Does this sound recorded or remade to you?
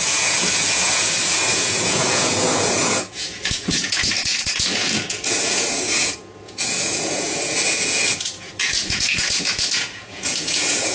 remade